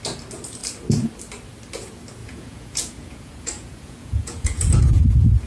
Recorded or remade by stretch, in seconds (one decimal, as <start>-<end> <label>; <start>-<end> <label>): 0.0-2.2 recorded; 2.2-5.5 remade